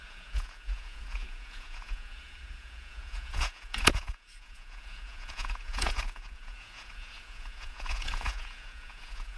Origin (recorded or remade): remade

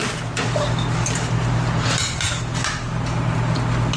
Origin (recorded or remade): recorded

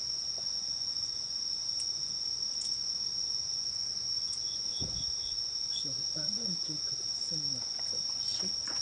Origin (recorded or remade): remade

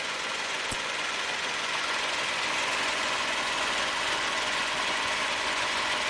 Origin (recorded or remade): remade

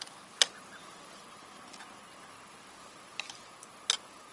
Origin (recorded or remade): recorded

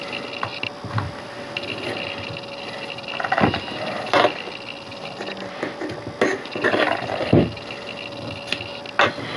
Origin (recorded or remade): recorded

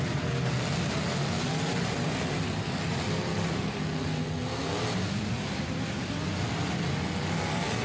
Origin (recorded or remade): recorded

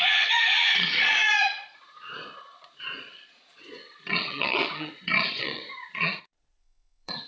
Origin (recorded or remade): remade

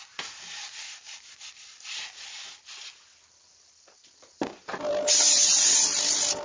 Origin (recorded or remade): recorded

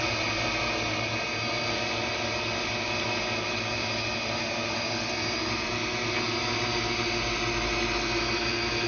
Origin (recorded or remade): recorded